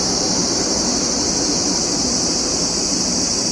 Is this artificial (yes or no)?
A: yes